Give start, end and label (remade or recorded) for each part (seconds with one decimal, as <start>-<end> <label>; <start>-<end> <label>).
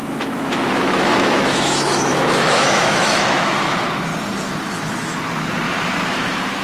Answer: 0.0-4.1 remade; 4.1-6.1 recorded; 6.1-6.6 remade